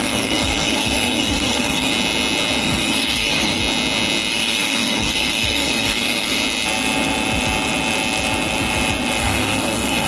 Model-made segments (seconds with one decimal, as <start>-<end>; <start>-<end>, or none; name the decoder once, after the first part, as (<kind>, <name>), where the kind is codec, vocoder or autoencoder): 0.0-1.9 (codec, SNAC); 2.6-3.6; 4.3-6.4; 9.2-10.1